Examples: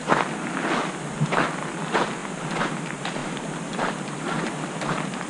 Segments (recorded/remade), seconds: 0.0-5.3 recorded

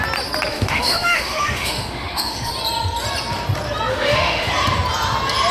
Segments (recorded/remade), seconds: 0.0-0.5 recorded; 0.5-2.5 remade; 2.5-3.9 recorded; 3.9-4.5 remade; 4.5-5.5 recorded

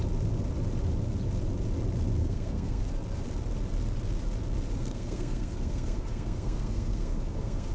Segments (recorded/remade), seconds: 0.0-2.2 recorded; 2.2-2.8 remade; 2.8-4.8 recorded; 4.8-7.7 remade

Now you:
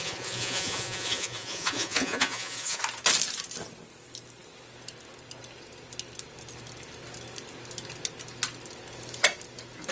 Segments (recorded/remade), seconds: 0.0-2.8 remade; 2.8-9.9 recorded

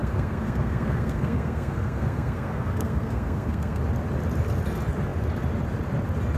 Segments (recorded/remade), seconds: 0.0-3.8 remade; 3.8-6.4 recorded

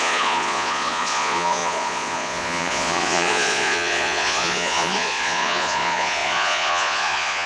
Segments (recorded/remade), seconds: 0.0-7.5 remade

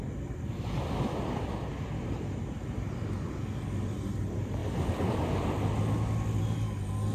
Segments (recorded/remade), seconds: 0.0-7.1 recorded

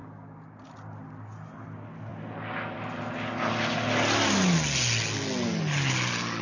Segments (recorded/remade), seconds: 0.0-6.4 recorded